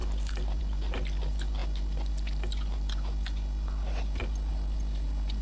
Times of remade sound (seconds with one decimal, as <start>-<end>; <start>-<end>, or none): none